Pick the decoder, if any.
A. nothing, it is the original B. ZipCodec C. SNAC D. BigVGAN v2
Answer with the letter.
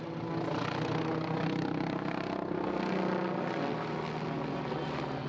A